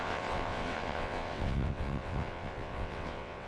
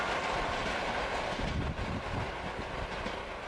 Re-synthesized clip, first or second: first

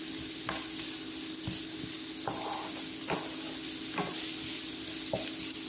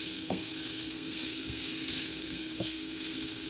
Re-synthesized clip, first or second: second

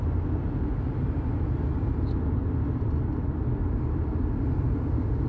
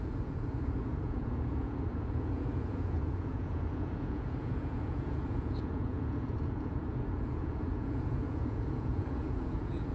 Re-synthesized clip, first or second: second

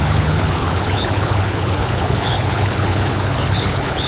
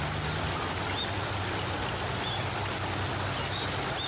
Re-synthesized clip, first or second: first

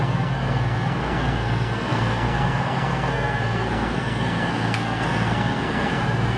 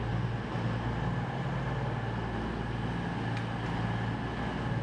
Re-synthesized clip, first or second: first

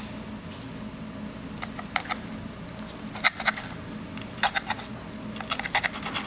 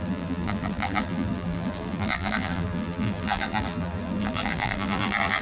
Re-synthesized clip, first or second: second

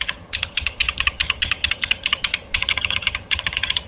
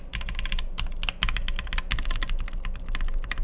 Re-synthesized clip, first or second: first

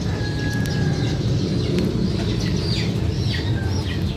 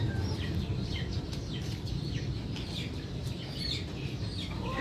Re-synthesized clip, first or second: second